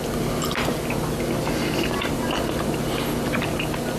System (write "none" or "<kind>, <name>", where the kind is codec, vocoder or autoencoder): none